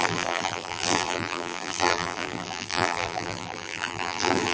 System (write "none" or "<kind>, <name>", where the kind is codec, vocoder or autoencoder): vocoder, BigVGAN v2